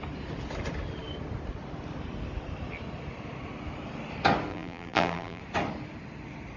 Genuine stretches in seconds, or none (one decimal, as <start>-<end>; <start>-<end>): 0.0-4.5; 5.4-6.6